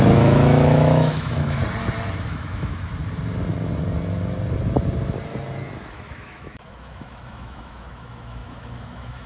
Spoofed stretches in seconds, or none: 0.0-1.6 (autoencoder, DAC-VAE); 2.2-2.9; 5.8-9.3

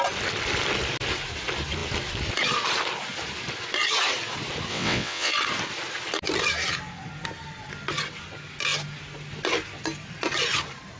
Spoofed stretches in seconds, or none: 4.7-5.3 (vocoder, WaveNeXt)

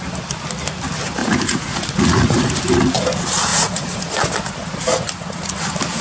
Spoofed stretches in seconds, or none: 1.2-2.6 (vocoder, Vocos); 3.5-4.1; 4.6-5.5

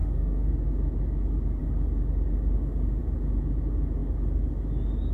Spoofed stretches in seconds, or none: 0.0-0.5 (codec, SNAC)

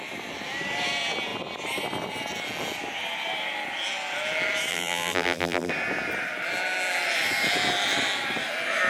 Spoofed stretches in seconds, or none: 4.7-5.7 (vocoder, BigVGAN v2)

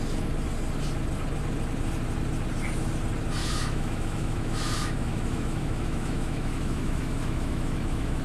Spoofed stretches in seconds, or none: 3.4-8.2 (autoencoder, DAC-VAE)